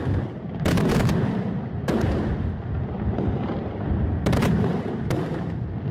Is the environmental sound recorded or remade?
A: recorded